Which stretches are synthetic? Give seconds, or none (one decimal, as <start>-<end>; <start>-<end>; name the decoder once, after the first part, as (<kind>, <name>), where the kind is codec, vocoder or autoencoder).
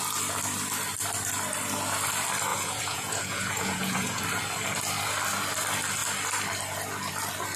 2.5-4.2 (vocoder, Vocos)